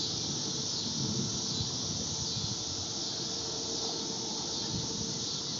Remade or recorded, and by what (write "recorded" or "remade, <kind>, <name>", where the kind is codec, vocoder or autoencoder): recorded